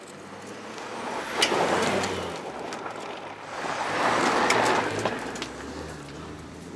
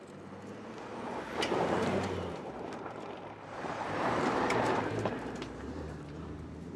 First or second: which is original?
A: first